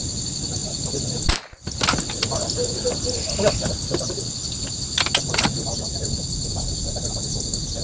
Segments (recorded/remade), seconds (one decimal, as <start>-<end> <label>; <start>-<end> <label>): 0.0-7.8 recorded